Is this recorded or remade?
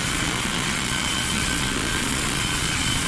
remade